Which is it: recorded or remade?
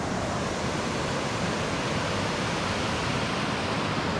recorded